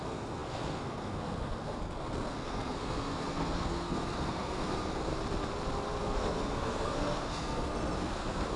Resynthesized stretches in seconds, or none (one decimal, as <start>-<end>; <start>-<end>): 0.0-5.1; 6.0-8.6